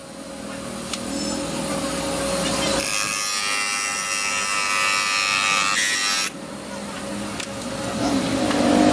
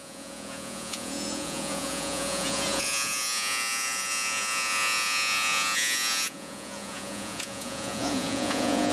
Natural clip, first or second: first